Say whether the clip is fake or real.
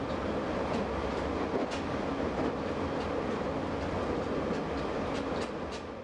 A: real